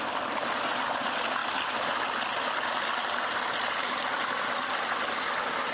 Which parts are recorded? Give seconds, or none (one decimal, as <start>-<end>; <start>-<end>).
0.0-5.7